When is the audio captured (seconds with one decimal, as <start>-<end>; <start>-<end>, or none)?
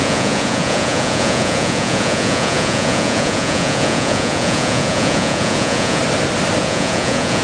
6.0-6.6